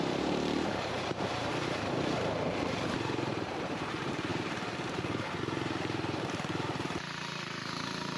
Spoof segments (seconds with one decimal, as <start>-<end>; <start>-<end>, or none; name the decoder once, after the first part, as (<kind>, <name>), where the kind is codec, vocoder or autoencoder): 0.0-8.2 (vocoder, BigVGAN v2)